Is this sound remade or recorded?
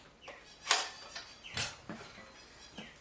recorded